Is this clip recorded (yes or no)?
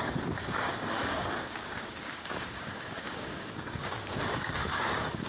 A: no